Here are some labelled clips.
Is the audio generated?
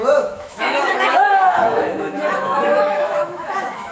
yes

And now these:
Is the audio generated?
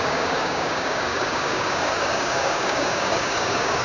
yes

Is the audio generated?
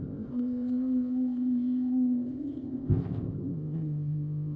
yes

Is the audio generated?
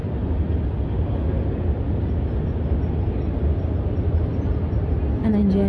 no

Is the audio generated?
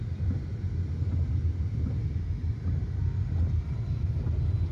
no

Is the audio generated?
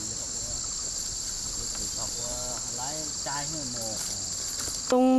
no